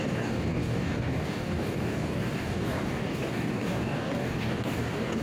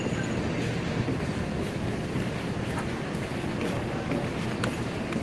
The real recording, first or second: second